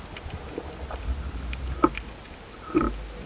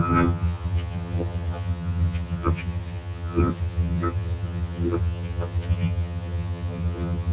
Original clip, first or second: first